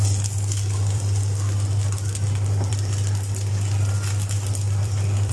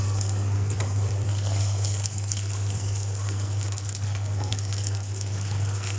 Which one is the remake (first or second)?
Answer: second